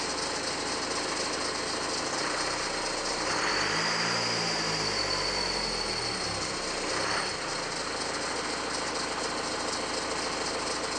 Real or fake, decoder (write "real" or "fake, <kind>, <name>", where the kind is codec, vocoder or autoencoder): real